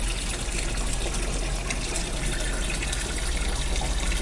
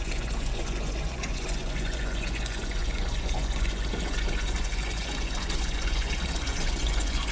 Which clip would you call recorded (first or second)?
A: first